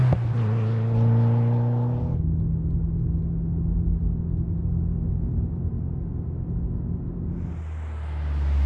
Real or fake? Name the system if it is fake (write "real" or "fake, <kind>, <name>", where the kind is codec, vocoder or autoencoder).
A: real